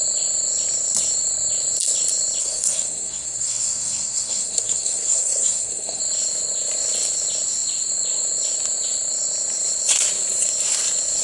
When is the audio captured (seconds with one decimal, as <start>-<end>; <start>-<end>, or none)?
0.0-2.4; 6.0-11.2